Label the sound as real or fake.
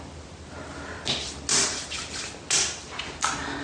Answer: real